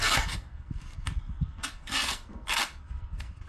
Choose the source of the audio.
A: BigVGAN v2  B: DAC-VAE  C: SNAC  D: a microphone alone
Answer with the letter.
C